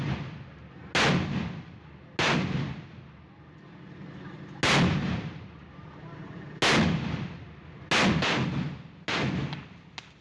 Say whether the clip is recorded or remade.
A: recorded